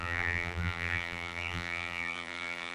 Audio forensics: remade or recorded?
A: remade